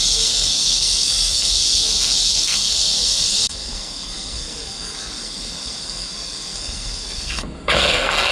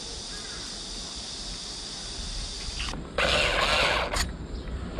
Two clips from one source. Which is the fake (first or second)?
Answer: first